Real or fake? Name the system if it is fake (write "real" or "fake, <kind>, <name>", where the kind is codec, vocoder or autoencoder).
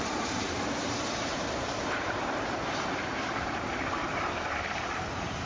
fake, vocoder, BigVGAN v2